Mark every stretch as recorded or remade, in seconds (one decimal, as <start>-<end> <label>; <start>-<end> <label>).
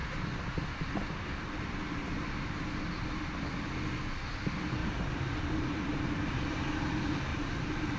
0.0-4.8 recorded; 4.8-6.5 remade; 6.5-7.3 recorded; 7.3-8.0 remade